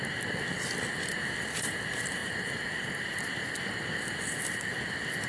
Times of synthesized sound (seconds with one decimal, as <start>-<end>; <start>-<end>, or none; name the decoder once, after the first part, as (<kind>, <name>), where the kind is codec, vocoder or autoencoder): none